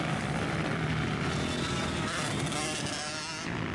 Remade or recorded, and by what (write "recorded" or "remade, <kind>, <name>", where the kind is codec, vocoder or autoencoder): recorded